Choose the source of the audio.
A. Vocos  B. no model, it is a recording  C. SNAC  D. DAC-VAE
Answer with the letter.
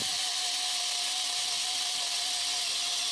B